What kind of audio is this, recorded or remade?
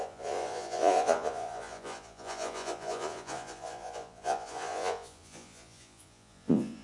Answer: remade